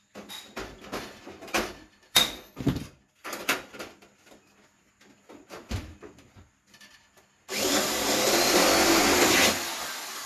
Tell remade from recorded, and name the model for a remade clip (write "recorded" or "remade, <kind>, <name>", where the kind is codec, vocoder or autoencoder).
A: recorded